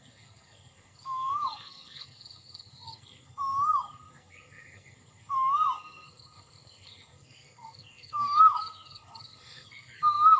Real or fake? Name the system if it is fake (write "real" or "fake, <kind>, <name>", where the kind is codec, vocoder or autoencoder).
fake, codec, SNAC